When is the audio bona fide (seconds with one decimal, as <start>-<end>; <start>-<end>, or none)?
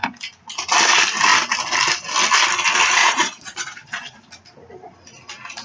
0.0-3.0; 4.3-5.6